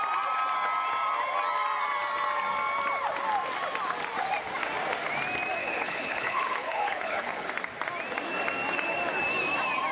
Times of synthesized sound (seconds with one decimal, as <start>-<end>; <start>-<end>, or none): 5.6-7.5